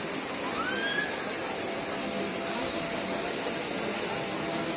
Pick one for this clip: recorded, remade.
recorded